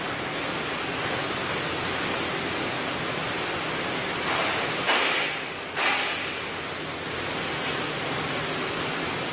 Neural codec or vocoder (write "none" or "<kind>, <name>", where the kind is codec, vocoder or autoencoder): none